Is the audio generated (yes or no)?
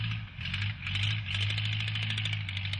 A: no